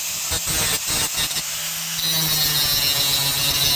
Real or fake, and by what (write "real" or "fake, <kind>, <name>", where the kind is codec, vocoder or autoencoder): real